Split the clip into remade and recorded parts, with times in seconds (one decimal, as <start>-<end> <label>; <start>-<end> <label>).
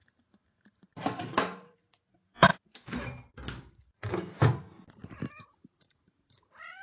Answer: 0.0-2.5 remade; 2.5-5.4 recorded; 5.4-6.8 remade